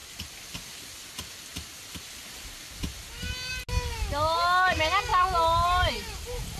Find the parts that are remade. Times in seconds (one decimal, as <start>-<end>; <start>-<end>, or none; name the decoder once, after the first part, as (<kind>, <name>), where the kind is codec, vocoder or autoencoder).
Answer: none